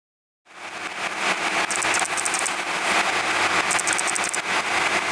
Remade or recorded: recorded